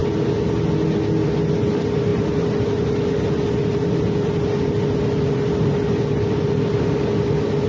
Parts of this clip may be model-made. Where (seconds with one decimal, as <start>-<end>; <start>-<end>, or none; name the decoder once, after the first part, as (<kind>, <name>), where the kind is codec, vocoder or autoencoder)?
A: none